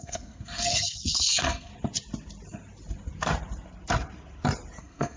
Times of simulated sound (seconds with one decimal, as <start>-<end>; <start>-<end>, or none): 0.0-1.7; 4.8-5.2